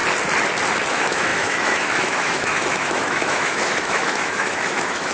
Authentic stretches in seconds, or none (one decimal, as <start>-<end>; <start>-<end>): 0.0-0.9